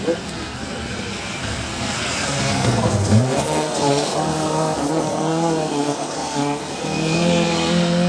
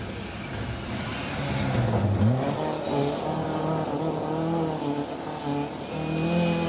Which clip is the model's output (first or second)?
first